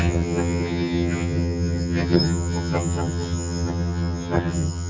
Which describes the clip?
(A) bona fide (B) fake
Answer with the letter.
B